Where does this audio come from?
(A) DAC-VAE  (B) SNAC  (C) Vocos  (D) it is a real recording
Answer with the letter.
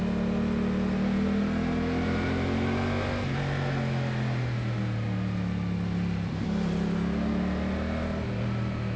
D